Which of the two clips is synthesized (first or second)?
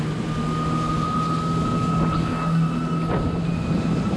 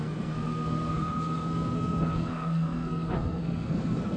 second